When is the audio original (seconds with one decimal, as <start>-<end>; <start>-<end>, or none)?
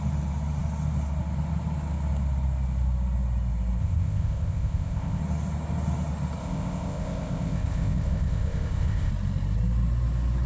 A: 0.0-3.8; 5.2-6.4; 9.1-10.5